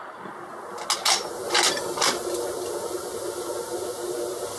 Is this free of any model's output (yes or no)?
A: yes